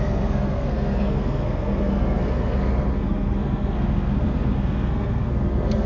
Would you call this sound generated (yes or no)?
yes